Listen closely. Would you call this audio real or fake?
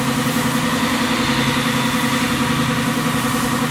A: real